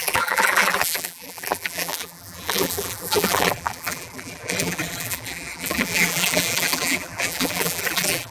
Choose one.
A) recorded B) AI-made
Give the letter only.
B